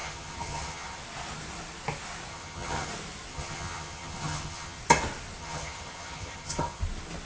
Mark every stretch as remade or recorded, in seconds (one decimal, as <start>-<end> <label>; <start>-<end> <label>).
0.0-1.0 remade; 1.0-2.3 recorded; 2.3-2.9 remade; 2.9-3.3 recorded; 3.3-4.8 remade; 4.8-5.4 recorded; 5.4-6.8 remade; 6.8-7.3 recorded